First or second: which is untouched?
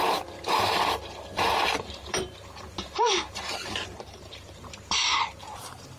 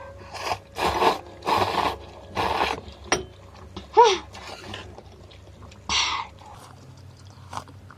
second